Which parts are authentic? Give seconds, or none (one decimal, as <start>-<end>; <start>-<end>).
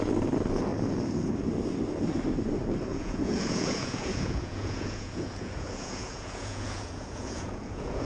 0.0-2.9